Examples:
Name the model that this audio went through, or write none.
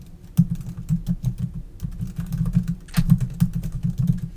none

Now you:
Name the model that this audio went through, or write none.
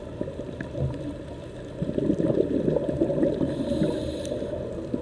none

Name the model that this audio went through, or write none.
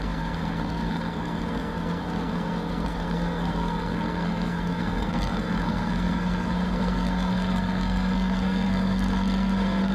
codec, SNAC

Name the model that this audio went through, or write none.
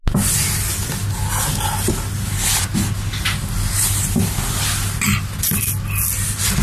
none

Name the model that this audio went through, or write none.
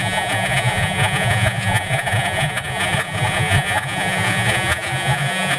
vocoder, Vocos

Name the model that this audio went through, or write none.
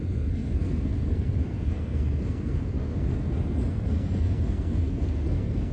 codec, SNAC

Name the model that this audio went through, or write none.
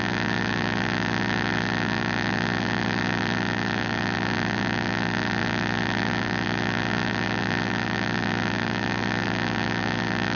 vocoder, BigVGAN v2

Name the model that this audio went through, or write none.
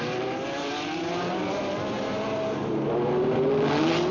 vocoder, BigVGAN v2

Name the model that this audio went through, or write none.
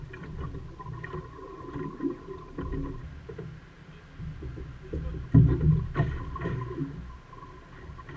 none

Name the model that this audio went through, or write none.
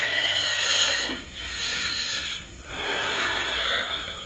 codec, SNAC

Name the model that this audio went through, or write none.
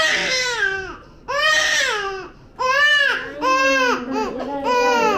none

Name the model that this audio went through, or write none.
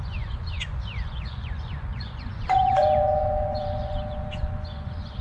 vocoder, Vocos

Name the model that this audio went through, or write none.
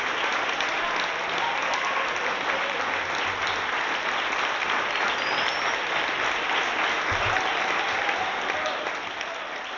none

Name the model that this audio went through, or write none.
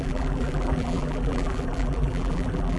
vocoder, BigVGAN v2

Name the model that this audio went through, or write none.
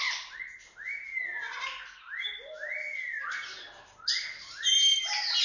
none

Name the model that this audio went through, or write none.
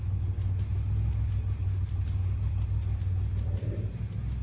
none